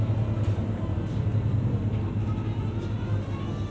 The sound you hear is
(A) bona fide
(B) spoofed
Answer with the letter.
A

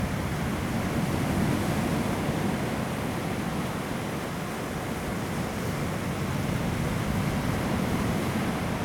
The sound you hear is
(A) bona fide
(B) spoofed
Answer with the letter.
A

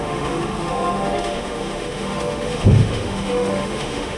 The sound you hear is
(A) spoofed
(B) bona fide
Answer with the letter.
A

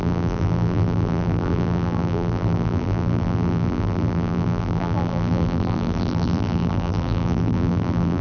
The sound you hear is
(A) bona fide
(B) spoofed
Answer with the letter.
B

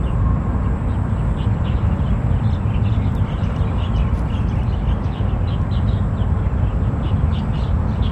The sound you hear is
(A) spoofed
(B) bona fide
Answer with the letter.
B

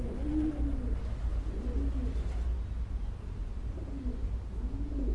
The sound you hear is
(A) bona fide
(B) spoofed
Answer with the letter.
A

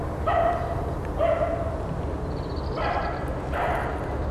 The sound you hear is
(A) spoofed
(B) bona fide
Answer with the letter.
B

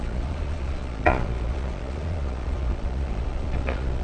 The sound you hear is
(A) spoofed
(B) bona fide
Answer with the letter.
A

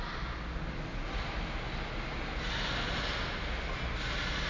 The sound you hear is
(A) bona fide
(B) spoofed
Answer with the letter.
A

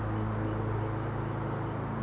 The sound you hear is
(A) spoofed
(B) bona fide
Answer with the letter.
B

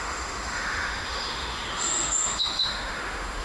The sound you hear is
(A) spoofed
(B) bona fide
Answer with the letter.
A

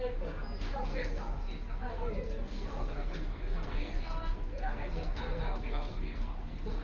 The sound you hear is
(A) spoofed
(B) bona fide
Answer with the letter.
A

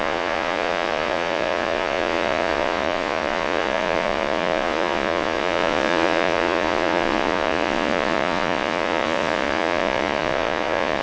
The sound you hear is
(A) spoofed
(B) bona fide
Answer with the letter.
A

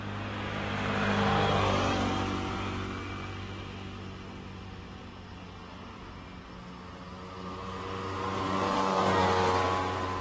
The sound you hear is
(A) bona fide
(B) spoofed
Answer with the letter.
A